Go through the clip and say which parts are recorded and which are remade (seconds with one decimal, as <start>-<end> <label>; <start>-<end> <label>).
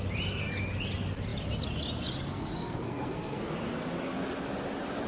0.0-2.3 recorded; 2.3-3.4 remade; 3.4-5.1 recorded